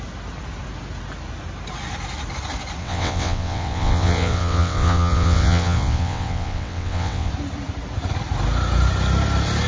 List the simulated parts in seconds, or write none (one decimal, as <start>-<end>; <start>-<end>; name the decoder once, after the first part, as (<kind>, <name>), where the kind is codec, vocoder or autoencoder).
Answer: 2.8-7.3 (vocoder, WaveNeXt)